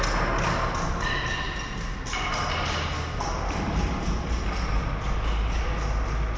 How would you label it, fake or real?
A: real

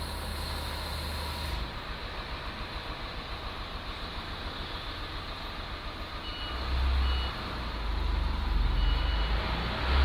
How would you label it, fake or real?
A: real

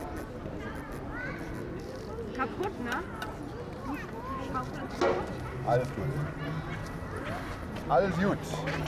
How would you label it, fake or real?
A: real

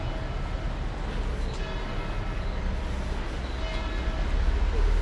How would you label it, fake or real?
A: real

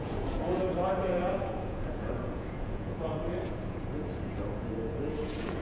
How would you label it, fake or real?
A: fake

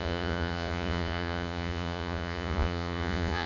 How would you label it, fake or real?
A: fake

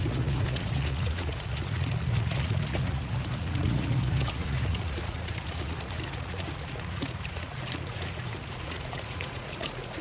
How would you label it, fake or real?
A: fake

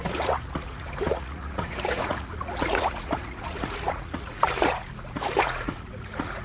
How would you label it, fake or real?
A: fake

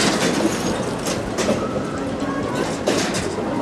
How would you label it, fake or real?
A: real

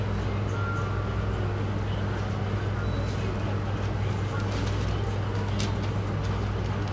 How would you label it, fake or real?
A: real